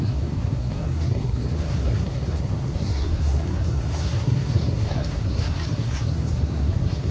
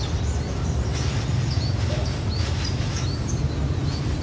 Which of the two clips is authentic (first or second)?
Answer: second